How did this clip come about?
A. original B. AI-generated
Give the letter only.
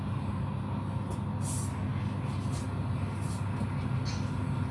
A